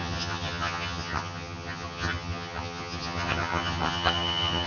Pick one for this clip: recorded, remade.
remade